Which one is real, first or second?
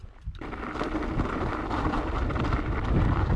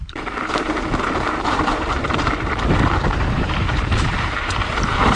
first